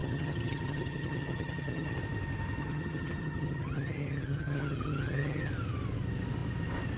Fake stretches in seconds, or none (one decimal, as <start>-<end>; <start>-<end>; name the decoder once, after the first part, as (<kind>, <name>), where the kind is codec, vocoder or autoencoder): 0.0-2.0 (vocoder, HiFi-GAN); 2.6-5.5